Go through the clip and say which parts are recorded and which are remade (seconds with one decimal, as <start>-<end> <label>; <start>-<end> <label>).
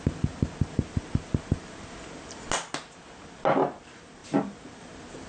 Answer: 0.0-5.3 recorded